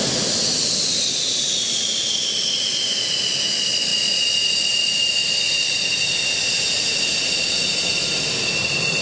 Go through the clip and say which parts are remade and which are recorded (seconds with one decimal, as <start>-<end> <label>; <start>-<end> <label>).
0.0-9.0 recorded